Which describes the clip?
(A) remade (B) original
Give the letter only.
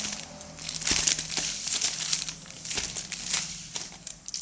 B